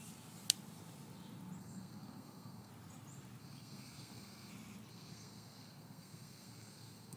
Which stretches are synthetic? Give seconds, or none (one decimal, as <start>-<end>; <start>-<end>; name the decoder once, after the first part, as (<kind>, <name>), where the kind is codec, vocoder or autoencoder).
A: 1.6-2.7 (codec, SNAC); 3.4-4.5; 4.9-7.2

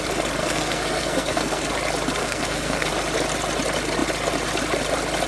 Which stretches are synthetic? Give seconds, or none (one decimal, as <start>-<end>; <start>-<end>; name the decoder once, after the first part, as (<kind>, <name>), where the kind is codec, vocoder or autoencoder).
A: 0.4-1.7 (codec, SNAC); 2.2-2.9

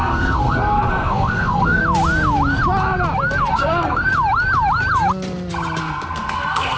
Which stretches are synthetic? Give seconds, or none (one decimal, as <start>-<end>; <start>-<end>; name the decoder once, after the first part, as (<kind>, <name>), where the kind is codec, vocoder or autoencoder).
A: 0.0-1.8 (codec, SNAC); 3.5-4.1; 5.8-6.8

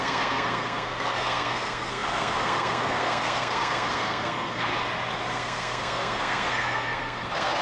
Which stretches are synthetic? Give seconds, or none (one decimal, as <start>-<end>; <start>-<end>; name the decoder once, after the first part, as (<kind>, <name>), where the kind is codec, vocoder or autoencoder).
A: 0.0-4.7 (codec, SNAC); 5.3-7.6

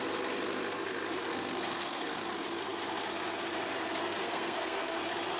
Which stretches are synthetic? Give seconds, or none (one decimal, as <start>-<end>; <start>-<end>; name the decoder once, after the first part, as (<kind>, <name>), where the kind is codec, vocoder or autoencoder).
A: 1.3-2.3 (codec, SNAC); 4.0-5.0

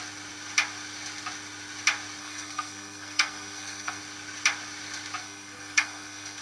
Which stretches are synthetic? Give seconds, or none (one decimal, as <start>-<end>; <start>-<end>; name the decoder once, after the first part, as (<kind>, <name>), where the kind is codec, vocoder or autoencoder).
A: 2.2-4.0 (codec, SNAC); 5.2-6.4

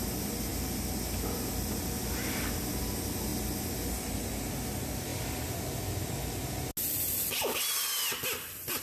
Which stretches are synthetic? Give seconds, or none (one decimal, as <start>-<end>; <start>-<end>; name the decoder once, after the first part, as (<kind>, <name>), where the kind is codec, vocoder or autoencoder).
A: none